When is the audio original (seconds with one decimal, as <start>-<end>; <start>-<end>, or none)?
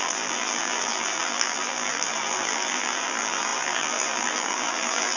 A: none